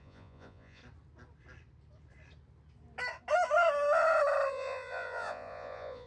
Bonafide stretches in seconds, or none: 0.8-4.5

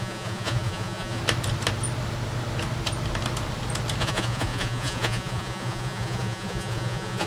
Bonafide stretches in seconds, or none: 1.2-4.0